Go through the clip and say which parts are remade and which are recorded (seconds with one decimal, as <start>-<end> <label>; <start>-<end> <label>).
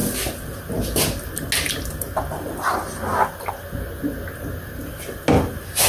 0.0-5.9 recorded